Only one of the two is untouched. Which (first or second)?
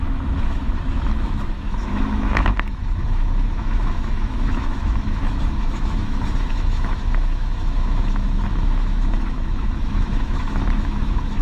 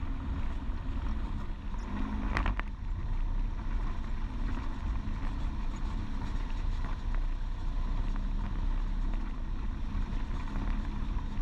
second